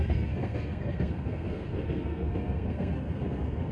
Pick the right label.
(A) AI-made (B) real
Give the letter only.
A